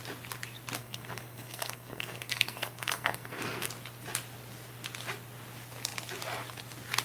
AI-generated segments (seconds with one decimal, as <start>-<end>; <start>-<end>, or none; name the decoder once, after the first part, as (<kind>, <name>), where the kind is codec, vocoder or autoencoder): 0.8-3.7 (codec, SNAC)